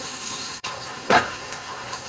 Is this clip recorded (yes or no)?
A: no